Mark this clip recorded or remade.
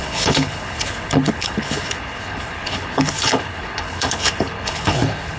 remade